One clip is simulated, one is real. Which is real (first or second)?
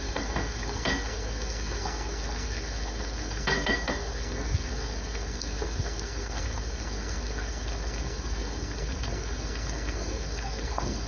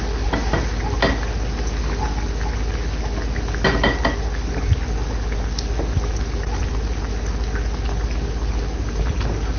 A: second